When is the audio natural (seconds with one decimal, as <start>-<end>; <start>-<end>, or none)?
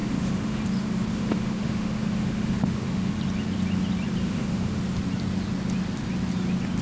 0.6-1.1; 3.1-4.2; 4.8-6.8